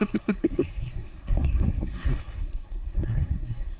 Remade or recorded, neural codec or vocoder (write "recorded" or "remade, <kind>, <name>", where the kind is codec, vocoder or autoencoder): remade, codec, SNAC